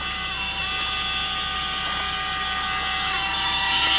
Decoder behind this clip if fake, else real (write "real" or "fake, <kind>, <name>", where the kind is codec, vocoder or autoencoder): real